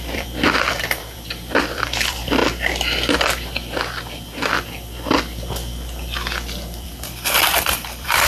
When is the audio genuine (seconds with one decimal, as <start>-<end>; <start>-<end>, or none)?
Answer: 2.4-6.8